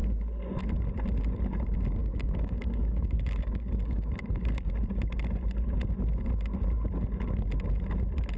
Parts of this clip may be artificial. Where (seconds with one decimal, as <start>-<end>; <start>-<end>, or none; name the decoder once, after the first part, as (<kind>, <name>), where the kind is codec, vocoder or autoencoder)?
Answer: 2.0-4.7 (codec, DAC)